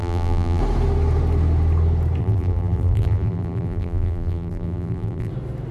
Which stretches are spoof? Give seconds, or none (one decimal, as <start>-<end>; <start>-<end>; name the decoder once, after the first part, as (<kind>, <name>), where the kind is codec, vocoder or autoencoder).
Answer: 0.0-0.6 (vocoder, BigVGAN v2); 2.2-5.3